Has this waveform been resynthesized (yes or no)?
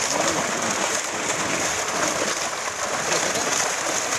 no